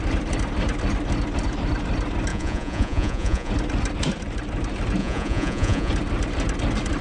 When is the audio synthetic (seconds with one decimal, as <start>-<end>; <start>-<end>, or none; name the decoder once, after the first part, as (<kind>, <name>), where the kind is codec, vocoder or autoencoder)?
2.3-3.5 (vocoder, Vocos); 5.0-5.9